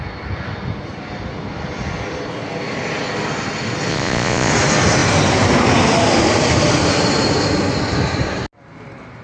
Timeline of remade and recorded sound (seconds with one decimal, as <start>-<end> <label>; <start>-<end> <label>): 0.0-3.9 recorded; 3.9-4.5 remade; 4.5-9.2 recorded